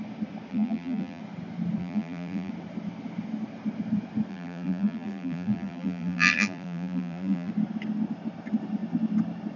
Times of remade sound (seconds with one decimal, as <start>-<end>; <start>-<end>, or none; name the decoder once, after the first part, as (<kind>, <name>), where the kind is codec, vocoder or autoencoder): 0.5-1.2 (vocoder, BigVGAN v2); 1.8-2.5; 4.3-7.5